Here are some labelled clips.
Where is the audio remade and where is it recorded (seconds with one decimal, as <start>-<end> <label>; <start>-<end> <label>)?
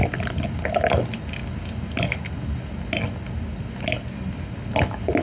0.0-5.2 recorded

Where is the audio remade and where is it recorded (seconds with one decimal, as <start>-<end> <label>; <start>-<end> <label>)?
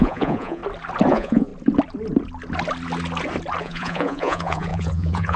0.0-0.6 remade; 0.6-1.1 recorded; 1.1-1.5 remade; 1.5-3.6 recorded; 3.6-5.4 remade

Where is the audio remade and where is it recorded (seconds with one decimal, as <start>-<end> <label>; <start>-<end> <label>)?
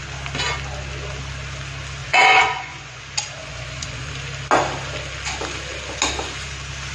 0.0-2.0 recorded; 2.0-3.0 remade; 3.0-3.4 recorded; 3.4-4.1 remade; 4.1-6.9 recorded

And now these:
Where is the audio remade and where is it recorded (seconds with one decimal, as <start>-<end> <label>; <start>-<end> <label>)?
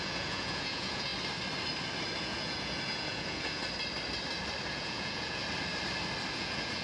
0.0-1.1 remade; 1.1-2.2 recorded; 2.2-3.6 remade; 3.6-4.7 recorded; 4.7-5.4 remade; 5.4-6.3 recorded; 6.3-6.8 remade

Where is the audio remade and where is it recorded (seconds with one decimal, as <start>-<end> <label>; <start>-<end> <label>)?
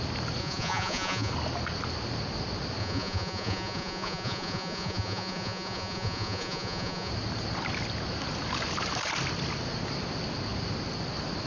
0.0-0.4 recorded; 0.4-1.3 remade; 1.3-2.8 recorded; 2.8-7.1 remade; 7.1-11.5 recorded